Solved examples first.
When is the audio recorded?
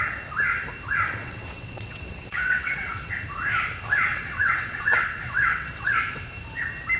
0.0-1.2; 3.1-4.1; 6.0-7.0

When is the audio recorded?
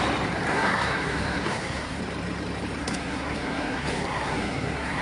0.0-0.5; 2.0-2.8